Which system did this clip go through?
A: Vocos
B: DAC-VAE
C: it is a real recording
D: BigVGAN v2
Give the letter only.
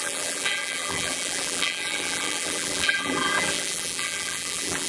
D